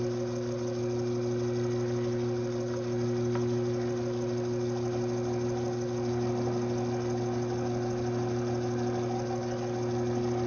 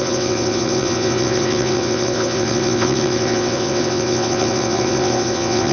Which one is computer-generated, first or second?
second